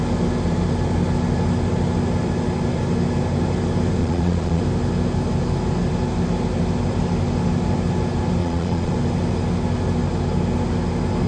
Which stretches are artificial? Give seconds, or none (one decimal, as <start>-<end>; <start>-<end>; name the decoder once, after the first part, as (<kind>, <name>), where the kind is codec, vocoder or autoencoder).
4.0-4.6 (vocoder, Vocos); 8.4-8.9